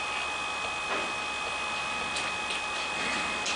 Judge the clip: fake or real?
real